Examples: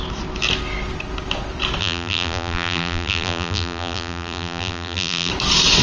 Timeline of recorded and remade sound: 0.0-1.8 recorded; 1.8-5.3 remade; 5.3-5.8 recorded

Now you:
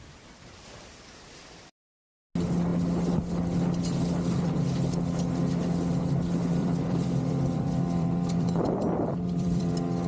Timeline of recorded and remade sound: 0.0-6.6 recorded; 6.6-9.7 remade; 9.7-10.1 recorded

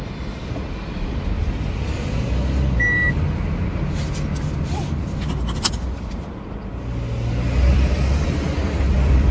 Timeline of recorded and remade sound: 0.0-7.7 recorded; 7.7-9.3 remade

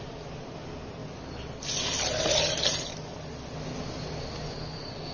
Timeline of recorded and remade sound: 0.0-5.1 recorded

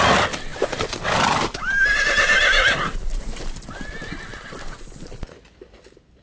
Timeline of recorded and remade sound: 0.0-0.5 recorded; 0.5-4.2 remade; 4.2-6.2 recorded

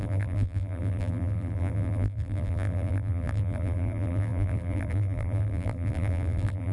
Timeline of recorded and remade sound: 0.0-6.7 remade

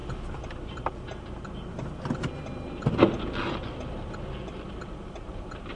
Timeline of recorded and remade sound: 0.0-5.8 recorded